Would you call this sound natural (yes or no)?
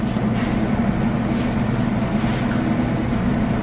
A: yes